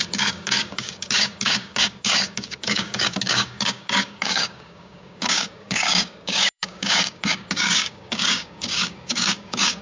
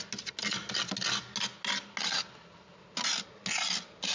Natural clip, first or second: second